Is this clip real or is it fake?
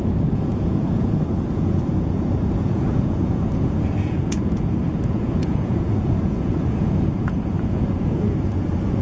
fake